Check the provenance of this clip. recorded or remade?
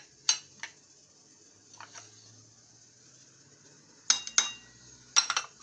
recorded